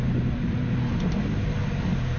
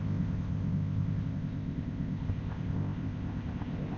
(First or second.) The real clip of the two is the first